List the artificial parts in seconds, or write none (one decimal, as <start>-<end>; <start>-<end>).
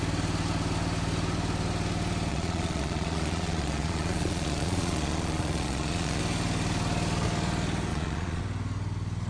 2.3-6.2; 7.9-8.4